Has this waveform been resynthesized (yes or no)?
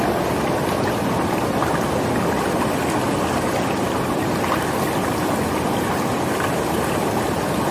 no